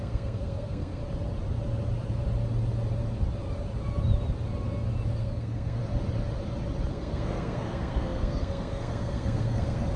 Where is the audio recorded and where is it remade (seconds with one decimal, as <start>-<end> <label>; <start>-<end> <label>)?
0.0-1.0 remade; 1.0-5.2 recorded; 5.2-5.8 remade; 5.8-6.9 recorded; 6.9-10.0 remade